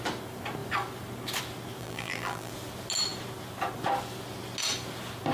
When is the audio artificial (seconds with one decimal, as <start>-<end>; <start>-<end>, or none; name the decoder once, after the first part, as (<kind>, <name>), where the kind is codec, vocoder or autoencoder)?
1.8-2.5 (vocoder, BigVGAN v2)